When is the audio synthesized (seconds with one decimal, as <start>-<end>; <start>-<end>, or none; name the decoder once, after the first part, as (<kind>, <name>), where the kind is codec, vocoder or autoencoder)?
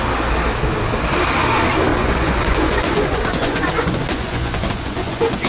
1.9-5.5 (vocoder, Vocos)